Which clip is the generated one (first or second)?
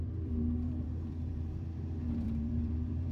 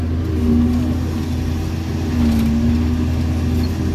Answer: first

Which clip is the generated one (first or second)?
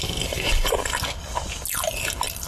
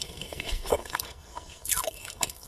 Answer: second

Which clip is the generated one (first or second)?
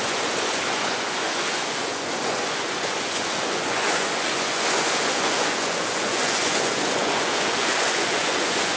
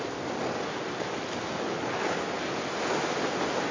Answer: first